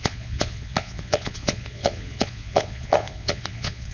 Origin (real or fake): fake